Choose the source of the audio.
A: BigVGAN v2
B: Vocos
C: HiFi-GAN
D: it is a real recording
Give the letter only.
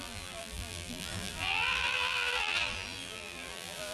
A